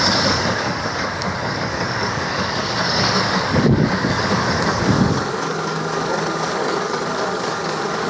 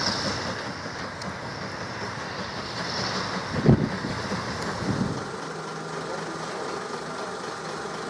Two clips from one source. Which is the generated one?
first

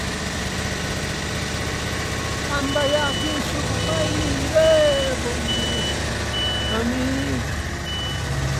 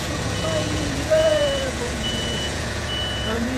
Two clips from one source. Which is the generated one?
second